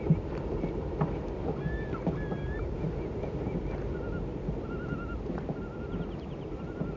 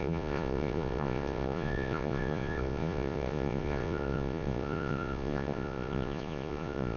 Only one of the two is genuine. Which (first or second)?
first